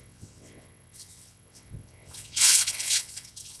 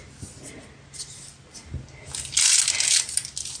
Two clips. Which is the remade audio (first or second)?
first